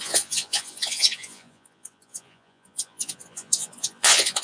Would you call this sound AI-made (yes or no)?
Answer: yes